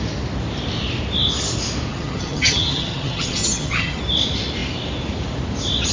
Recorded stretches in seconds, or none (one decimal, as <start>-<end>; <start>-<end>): 0.0-1.9; 4.0-5.9